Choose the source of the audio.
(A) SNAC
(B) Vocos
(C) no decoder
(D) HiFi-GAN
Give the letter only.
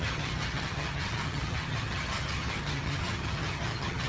D